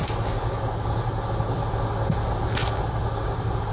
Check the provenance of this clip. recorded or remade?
recorded